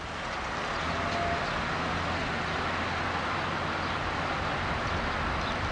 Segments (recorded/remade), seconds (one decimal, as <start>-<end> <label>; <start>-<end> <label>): 0.0-5.7 recorded